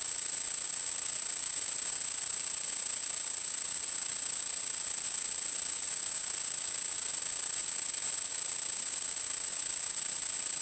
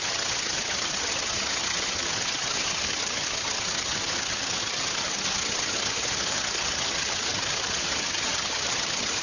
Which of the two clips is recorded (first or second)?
first